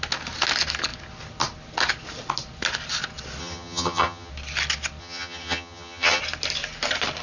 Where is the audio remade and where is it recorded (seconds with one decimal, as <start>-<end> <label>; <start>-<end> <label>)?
0.0-3.4 recorded; 3.4-4.3 remade; 4.3-5.0 recorded; 5.0-6.2 remade; 6.2-7.2 recorded